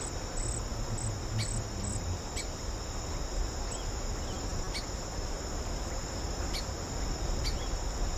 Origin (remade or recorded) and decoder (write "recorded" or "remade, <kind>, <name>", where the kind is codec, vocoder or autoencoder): recorded